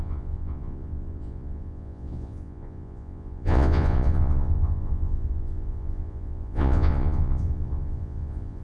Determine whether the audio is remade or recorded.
remade